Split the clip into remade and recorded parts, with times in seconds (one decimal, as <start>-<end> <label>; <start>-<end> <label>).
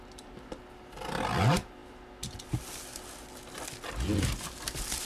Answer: 0.0-5.1 recorded